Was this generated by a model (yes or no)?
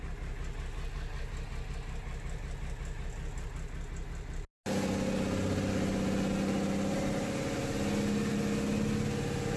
no